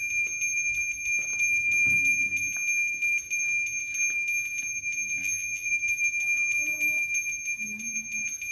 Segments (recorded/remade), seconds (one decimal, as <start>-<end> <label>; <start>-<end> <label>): 0.0-5.2 recorded; 5.2-5.7 remade; 5.7-8.5 recorded